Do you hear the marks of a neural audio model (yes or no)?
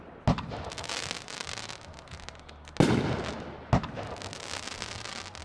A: no